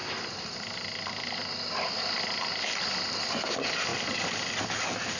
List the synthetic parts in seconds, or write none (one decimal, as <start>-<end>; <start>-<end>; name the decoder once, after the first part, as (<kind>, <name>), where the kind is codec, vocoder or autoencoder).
none